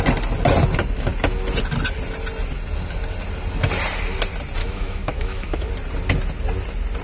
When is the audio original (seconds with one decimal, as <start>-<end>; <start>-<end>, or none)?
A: 0.0-4.6; 5.7-7.0